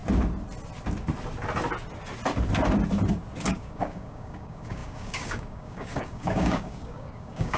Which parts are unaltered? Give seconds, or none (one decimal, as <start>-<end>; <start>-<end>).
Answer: 0.0-3.5